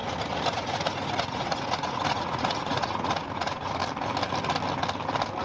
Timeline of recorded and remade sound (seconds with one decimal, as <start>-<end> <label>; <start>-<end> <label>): 0.0-3.8 remade; 3.8-5.4 recorded